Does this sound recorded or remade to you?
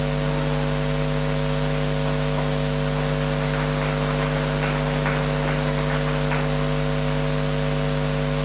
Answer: recorded